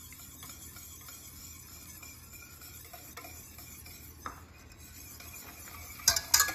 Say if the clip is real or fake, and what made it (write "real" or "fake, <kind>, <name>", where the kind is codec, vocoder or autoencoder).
real